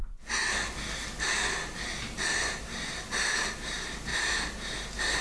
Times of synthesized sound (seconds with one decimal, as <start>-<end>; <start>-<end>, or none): none